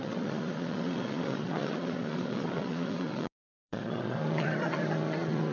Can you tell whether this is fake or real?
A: fake